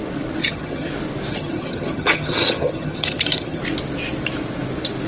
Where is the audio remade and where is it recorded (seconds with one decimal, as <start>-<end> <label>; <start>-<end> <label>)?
0.0-0.4 recorded; 0.4-0.9 remade; 0.9-1.3 recorded; 1.3-3.6 remade; 3.6-5.1 recorded

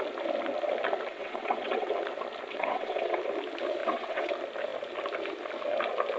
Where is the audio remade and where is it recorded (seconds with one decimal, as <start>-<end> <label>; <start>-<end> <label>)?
0.0-1.1 recorded; 1.1-1.9 remade; 1.9-2.5 recorded; 2.5-3.2 remade; 3.2-3.8 recorded; 3.8-4.3 remade; 4.3-6.2 recorded

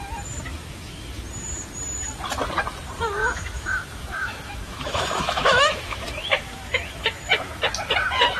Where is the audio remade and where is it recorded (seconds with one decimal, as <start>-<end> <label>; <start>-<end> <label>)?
0.0-0.5 recorded; 0.5-1.2 remade; 1.2-3.2 recorded; 3.2-7.6 remade; 7.6-8.4 recorded

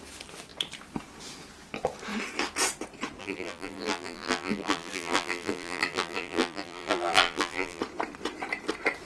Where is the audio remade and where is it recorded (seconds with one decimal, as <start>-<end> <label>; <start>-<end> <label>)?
0.0-3.2 recorded; 3.2-7.8 remade; 7.8-9.1 recorded

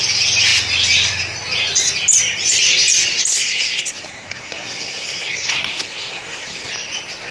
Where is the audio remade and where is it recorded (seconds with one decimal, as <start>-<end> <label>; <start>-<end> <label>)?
0.0-3.3 recorded; 3.3-6.7 remade; 6.7-7.3 recorded

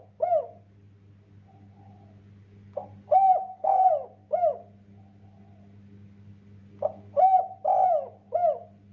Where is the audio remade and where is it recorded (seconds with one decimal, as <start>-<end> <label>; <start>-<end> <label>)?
0.0-3.4 recorded; 3.4-3.9 remade; 3.9-8.9 recorded